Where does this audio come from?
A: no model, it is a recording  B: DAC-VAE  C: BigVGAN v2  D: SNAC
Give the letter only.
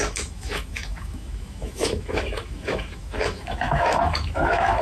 B